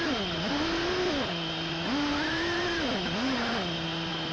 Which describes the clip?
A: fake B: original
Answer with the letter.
B